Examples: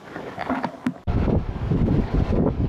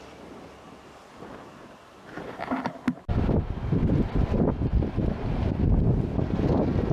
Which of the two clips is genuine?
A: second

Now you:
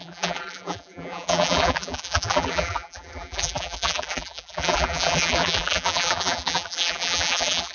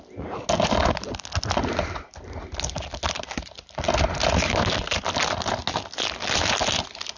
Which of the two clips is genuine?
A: second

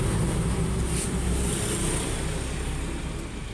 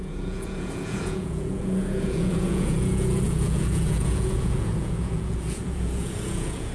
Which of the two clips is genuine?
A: first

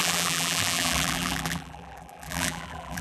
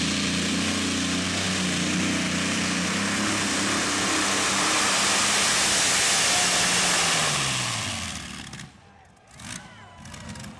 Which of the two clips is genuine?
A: second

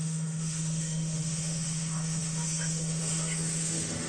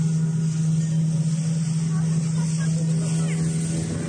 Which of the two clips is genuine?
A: second